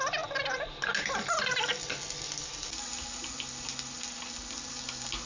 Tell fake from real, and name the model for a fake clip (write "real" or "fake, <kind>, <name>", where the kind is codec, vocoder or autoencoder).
real